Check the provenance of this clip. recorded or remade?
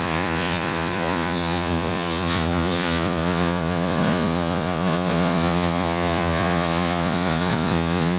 remade